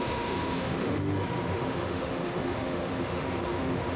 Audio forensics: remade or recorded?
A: remade